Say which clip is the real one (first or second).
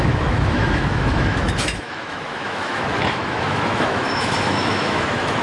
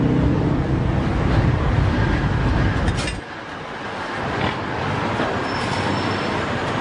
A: second